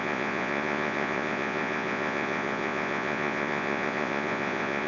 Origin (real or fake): fake